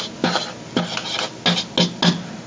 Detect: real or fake real